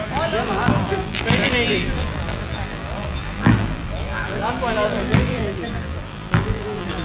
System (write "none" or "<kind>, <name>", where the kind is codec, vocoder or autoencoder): vocoder, BigVGAN v2